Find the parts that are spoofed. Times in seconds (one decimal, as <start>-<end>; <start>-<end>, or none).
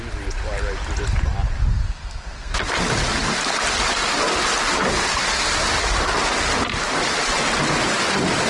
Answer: 1.7-2.5